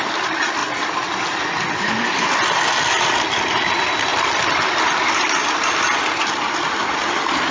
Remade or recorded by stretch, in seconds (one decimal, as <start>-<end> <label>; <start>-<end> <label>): 0.0-7.5 recorded